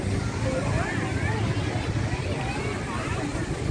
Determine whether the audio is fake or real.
real